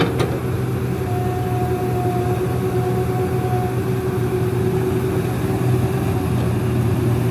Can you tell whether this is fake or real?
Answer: real